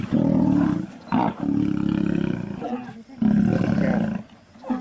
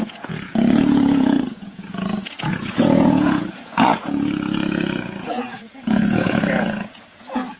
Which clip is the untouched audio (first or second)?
first